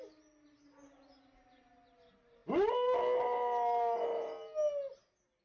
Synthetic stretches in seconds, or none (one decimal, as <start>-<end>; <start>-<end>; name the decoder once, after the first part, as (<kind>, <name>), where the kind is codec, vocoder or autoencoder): none